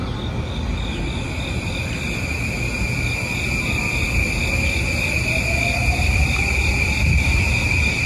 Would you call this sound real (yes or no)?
yes